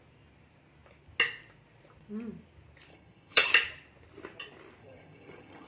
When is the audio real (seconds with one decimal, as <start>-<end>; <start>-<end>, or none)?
0.0-2.9; 3.5-4.8

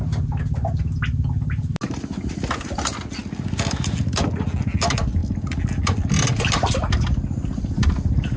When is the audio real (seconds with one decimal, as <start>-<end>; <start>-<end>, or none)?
0.0-8.4